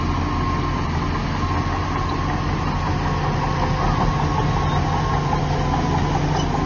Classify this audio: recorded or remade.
recorded